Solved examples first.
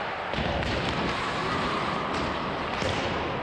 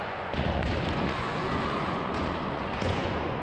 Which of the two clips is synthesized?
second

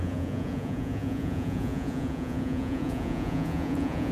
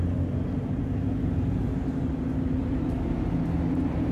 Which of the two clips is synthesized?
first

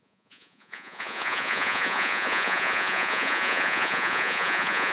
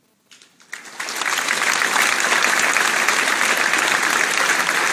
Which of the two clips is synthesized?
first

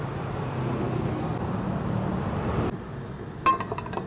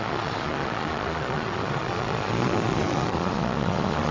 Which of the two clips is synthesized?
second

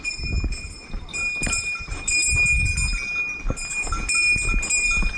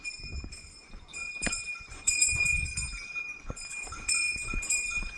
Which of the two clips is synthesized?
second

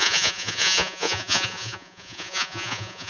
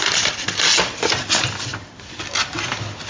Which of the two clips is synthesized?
first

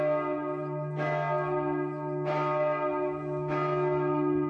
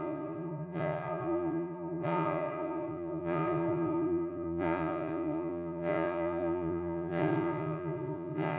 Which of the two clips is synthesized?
second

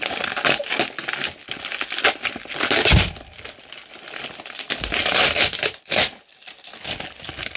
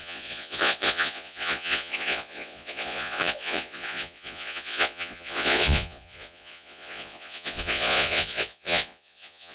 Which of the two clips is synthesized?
second